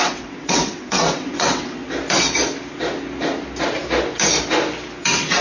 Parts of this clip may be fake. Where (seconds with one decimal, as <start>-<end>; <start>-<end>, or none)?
0.0-1.8; 5.0-5.4